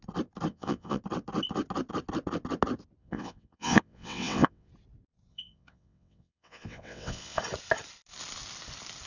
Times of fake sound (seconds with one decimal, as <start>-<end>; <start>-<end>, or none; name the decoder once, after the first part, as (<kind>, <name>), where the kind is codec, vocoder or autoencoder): 0.5-1.0 (vocoder, WaveNeXt); 3.0-4.7; 5.3-7.4